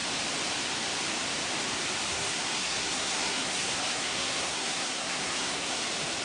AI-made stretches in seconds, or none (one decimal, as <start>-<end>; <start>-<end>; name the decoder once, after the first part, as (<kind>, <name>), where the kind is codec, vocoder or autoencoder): 2.1-5.8 (codec, SNAC)